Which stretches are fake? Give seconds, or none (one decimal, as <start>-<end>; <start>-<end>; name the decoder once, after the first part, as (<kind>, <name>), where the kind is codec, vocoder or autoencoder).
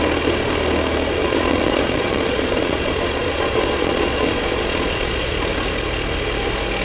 1.2-5.3 (vocoder, Vocos)